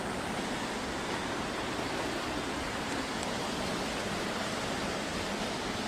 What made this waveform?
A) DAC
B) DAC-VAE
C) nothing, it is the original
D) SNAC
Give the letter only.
C